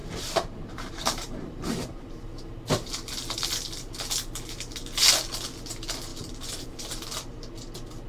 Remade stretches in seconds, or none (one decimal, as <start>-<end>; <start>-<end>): 0.0-2.5; 6.1-6.8